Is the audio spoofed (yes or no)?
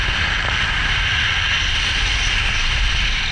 no